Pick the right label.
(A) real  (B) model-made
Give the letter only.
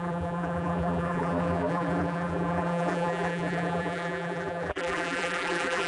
B